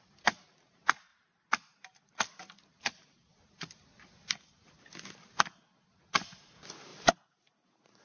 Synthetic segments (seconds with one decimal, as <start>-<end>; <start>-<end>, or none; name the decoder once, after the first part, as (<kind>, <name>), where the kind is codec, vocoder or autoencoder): 6.9-8.0 (vocoder, BigVGAN v2)